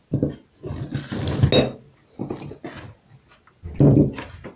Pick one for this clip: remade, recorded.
recorded